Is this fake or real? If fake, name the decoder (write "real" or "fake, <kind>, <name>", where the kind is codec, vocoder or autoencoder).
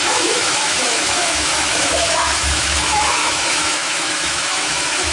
fake, autoencoder, DAC-VAE